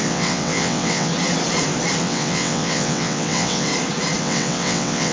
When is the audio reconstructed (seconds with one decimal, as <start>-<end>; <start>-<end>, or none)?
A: 0.0-1.1; 2.0-3.7; 4.2-5.1